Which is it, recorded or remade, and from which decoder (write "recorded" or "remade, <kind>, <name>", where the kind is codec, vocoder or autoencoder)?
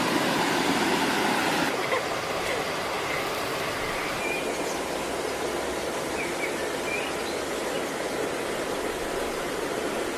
recorded